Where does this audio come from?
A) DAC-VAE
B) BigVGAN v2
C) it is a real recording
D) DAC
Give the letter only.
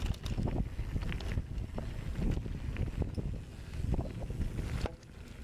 C